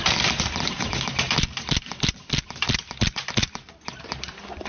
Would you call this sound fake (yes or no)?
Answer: no